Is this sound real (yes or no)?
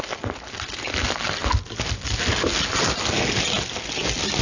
yes